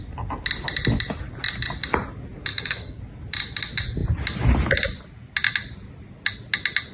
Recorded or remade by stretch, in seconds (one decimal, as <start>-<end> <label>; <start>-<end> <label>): 0.0-2.5 recorded; 2.5-3.0 remade; 3.0-6.9 recorded